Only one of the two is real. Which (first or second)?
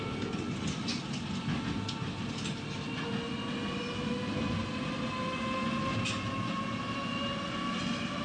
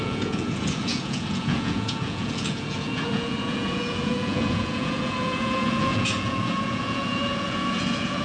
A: first